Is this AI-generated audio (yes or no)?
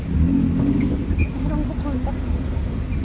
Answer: no